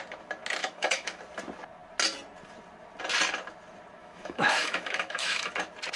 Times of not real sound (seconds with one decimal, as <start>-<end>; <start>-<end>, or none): 0.6-1.2; 4.0-5.5